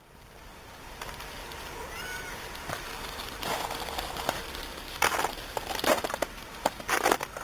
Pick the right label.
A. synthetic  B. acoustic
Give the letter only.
B